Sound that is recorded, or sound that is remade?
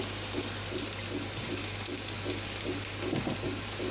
recorded